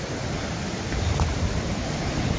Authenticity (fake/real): real